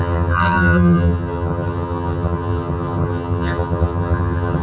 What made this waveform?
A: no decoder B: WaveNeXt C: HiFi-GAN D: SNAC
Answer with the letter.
C